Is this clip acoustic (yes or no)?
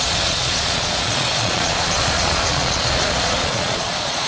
no